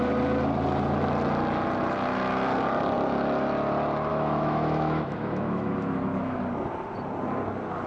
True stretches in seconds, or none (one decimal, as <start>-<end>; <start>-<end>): 0.0-4.1; 6.4-7.9